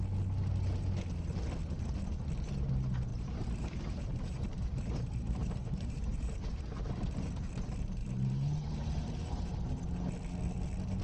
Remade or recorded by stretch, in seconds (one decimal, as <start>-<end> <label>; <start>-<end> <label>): 0.0-3.1 recorded; 3.1-6.9 remade; 6.9-8.0 recorded; 8.0-9.5 remade; 9.5-11.0 recorded